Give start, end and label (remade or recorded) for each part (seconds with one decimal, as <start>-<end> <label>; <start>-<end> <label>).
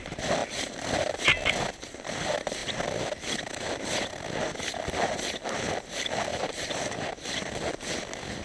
0.0-6.3 recorded; 6.3-7.1 remade; 7.1-8.4 recorded